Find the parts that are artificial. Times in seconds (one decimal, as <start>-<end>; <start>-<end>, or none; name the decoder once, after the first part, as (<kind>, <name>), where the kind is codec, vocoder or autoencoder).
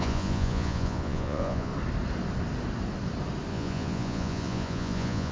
0.0-1.7 (vocoder, Vocos); 3.5-5.3